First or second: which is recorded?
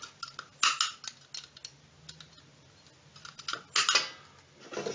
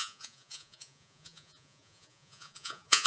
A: first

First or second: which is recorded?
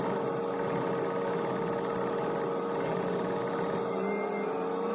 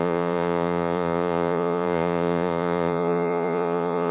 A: first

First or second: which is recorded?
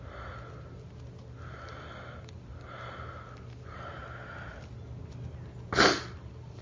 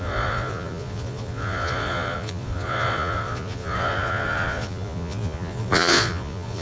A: first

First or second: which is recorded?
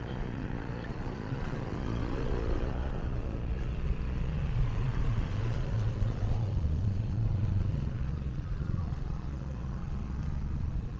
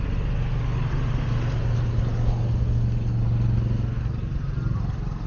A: second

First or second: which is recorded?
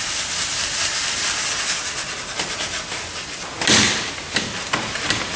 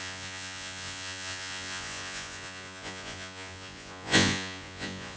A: first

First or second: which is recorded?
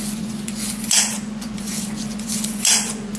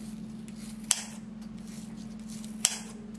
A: second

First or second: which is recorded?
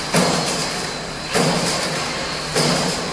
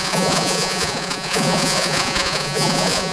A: first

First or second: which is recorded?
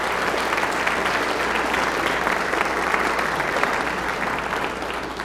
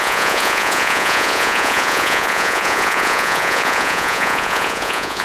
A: first